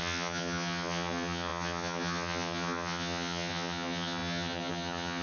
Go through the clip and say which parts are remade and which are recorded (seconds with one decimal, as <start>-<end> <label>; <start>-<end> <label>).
0.0-5.2 remade